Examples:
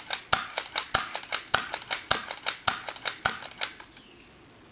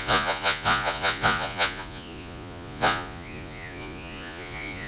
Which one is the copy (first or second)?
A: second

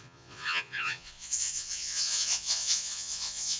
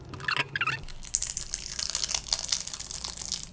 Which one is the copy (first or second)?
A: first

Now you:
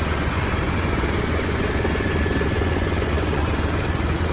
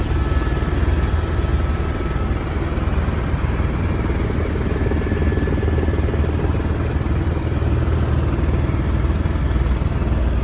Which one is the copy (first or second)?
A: first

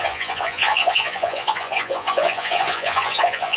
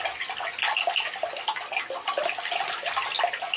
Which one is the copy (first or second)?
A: first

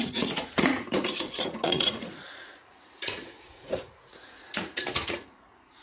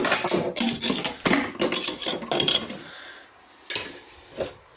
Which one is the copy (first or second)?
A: first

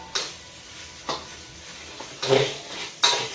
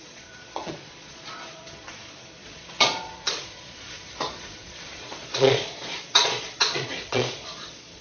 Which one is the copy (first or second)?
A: second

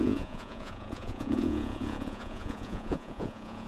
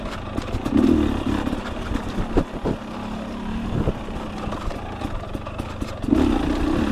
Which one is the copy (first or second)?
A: first